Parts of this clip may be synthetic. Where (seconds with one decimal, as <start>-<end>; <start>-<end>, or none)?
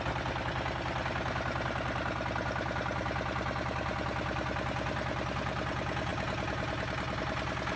none